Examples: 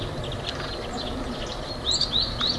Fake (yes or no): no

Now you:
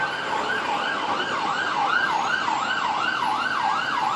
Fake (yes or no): no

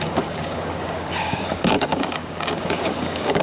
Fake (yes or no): yes